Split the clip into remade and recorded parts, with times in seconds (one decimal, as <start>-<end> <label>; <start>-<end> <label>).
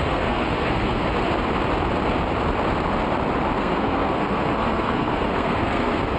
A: 0.0-1.1 remade; 1.1-3.6 recorded; 3.6-6.2 remade